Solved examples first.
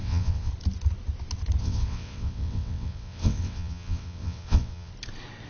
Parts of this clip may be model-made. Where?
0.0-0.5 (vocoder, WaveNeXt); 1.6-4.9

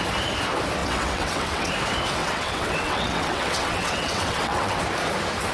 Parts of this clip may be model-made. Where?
0.8-1.7 (vocoder, WaveNeXt); 2.2-4.8